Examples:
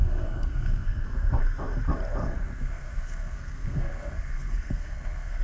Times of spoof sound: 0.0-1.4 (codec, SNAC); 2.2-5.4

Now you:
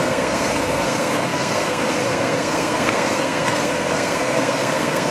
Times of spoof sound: 0.0-5.1 (codec, SNAC)

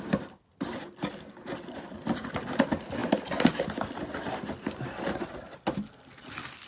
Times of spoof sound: none